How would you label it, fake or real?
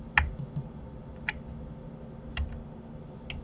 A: real